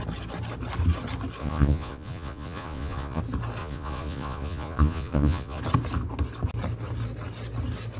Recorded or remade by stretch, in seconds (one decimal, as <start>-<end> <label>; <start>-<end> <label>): 0.0-1.4 recorded; 1.4-3.2 remade; 3.2-3.6 recorded; 3.6-5.6 remade; 5.6-8.0 recorded